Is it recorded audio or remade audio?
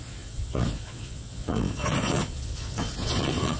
remade